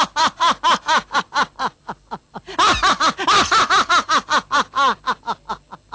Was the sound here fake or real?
real